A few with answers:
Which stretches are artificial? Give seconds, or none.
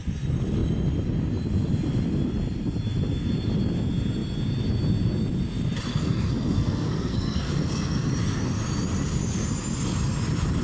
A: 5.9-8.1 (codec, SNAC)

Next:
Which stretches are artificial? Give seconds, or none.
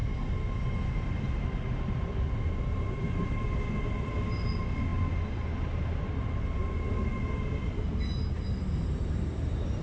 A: none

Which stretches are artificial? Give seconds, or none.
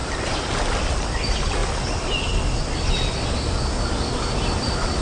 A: none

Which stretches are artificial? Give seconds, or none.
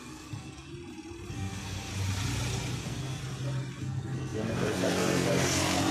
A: 0.0-0.7 (codec, SNAC); 1.3-1.9; 2.8-3.2; 3.8-5.9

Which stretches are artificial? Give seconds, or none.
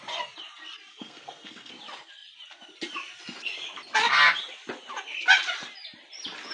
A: 0.9-1.7 (codec, SNAC)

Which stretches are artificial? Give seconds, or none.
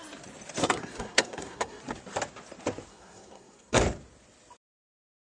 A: 0.6-1.8 (codec, SNAC); 2.9-3.8